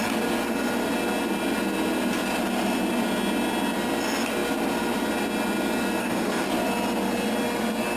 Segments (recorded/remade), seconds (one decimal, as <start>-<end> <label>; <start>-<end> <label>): 0.0-6.0 recorded; 6.0-6.5 remade; 6.5-8.0 recorded